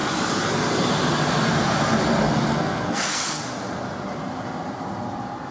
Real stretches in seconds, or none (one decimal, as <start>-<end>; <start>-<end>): 0.0-2.5; 3.4-5.5